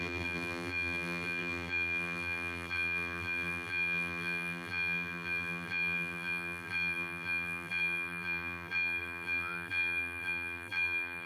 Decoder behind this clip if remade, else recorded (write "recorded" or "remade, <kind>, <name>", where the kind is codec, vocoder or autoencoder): remade, vocoder, BigVGAN v2